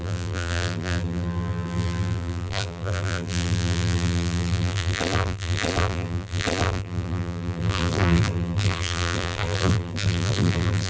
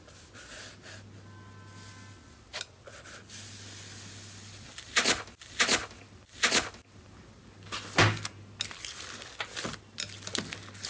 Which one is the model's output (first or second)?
first